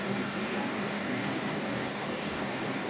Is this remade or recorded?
remade